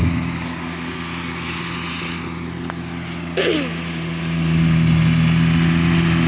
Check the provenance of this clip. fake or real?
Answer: real